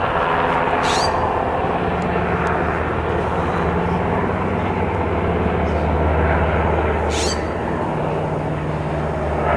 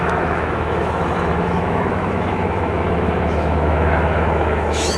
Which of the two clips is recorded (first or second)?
first